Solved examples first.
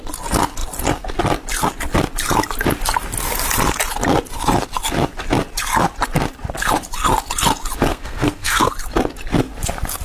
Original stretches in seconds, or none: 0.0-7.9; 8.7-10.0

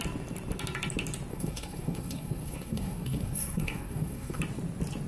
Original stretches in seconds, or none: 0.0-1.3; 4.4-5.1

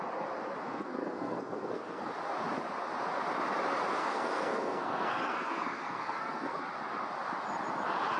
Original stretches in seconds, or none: 0.0-0.6; 2.1-4.0; 6.6-8.2

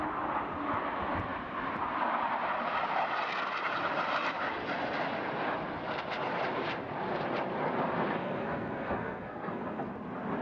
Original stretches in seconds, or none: 0.0-8.2; 9.9-10.4